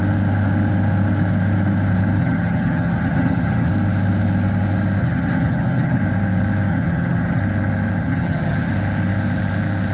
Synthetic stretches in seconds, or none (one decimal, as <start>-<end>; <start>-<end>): 2.2-3.7; 5.0-6.0; 6.7-7.4; 8.0-8.7